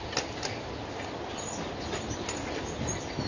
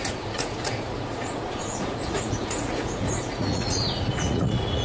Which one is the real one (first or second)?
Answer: first